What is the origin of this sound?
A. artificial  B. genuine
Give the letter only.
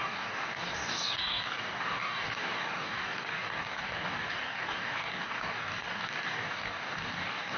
A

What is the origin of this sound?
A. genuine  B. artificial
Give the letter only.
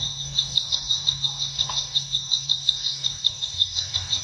B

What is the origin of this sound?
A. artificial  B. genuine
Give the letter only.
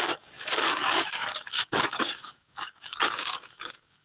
A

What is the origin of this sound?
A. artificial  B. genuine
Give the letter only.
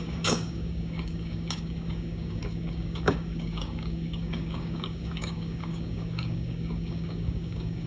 A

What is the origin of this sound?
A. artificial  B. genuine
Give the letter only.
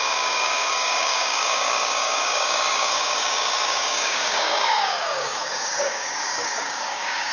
A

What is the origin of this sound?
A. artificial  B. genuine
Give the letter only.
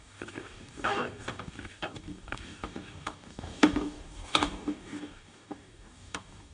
A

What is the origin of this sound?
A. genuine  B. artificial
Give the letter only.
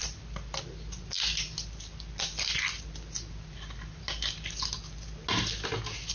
A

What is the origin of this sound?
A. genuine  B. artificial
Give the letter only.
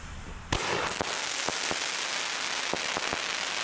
A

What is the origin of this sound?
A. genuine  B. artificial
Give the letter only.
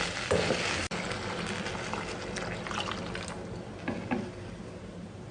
A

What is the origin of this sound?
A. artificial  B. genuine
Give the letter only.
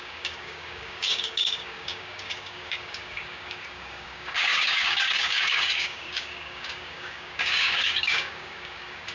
A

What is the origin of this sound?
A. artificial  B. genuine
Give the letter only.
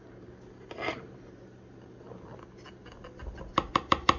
B